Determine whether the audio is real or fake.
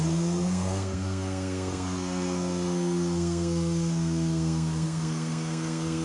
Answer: fake